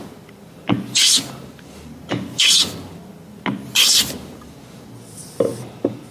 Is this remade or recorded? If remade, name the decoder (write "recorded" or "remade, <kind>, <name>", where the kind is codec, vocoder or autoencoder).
recorded